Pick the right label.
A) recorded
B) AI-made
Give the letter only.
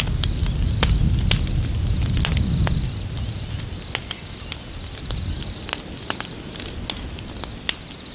A